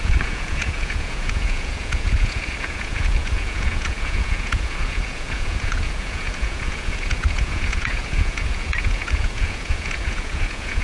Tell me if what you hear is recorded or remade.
remade